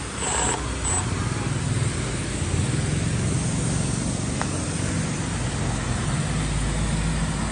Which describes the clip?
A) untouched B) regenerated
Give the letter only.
A